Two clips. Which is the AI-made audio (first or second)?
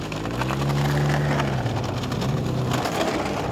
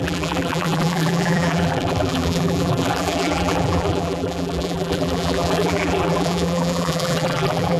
second